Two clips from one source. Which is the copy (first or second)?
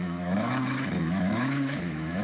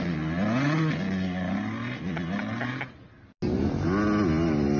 first